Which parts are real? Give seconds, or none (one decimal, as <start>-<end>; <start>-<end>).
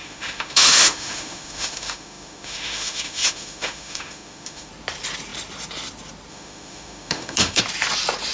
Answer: 4.7-6.3; 7.6-8.3